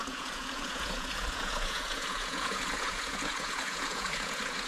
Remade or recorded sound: remade